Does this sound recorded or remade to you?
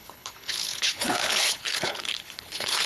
remade